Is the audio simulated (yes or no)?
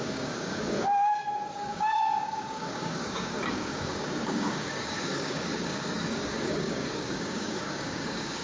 yes